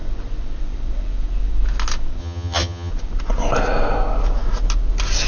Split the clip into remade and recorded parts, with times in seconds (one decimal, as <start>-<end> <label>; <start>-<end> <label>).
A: 0.0-2.2 recorded; 2.2-2.9 remade; 2.9-5.3 recorded